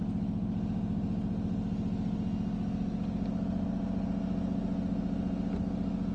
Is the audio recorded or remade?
recorded